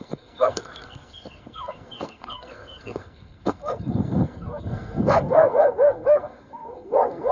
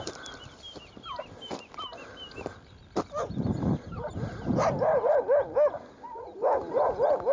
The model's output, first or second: first